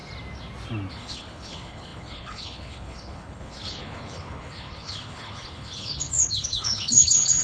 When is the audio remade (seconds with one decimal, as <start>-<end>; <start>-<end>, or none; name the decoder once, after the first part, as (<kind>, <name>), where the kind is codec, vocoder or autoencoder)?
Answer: 0.9-7.4 (codec, HILCodec)